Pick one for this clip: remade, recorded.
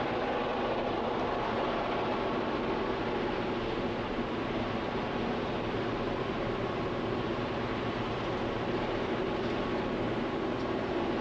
recorded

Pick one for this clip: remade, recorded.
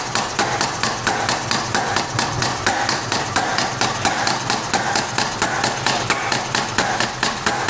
recorded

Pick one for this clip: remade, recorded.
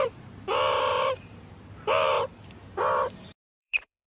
remade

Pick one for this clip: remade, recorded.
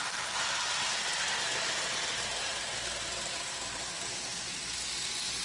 recorded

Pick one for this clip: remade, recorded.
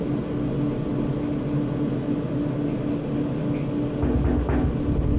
recorded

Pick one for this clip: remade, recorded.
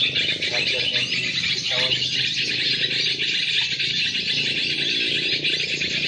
recorded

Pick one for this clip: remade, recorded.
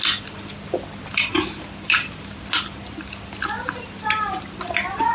remade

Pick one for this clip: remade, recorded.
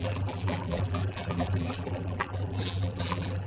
remade